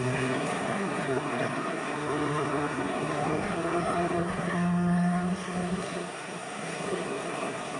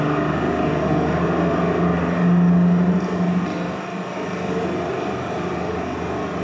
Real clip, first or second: second